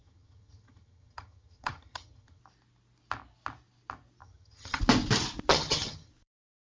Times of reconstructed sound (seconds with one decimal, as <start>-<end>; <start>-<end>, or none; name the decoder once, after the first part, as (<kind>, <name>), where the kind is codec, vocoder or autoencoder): 0.0-2.4 (vocoder, HiFi-GAN); 4.2-4.8; 5.5-6.1